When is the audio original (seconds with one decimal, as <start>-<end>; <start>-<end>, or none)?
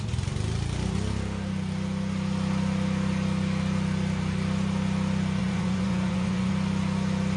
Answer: 0.0-5.4; 6.5-7.4